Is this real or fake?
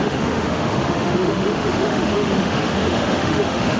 fake